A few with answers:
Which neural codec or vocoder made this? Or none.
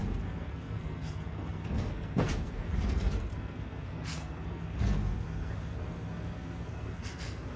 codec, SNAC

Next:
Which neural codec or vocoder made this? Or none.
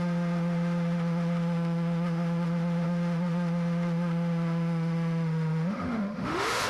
autoencoder, DAC-VAE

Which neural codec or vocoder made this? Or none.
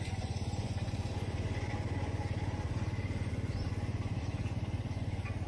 vocoder, Vocos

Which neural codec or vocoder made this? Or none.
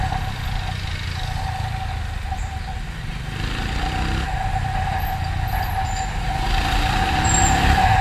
none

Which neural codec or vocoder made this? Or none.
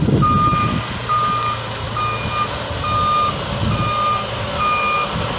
none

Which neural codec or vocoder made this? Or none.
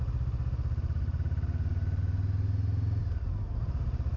none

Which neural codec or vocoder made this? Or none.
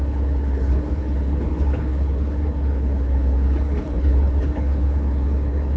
codec, HILCodec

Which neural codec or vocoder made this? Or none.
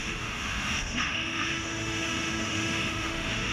autoencoder, DAC-VAE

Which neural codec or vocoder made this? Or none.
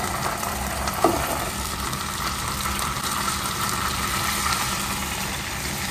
vocoder, BigVGAN v2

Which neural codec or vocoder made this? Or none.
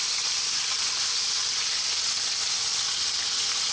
none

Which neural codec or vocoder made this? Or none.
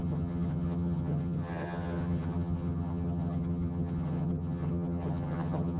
vocoder, HiFi-GAN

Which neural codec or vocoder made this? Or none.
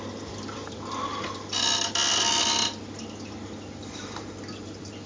none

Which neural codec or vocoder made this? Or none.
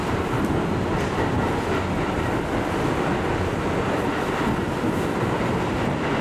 none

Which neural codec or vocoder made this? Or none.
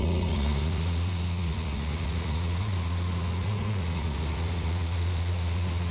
vocoder, Vocos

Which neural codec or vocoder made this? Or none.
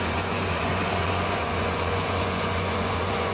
vocoder, Vocos